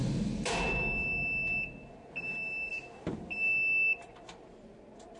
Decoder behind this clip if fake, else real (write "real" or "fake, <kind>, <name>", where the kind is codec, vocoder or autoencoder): real